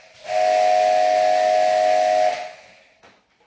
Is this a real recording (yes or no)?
yes